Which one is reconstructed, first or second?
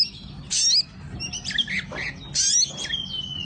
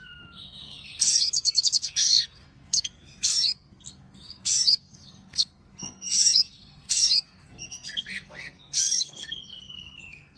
second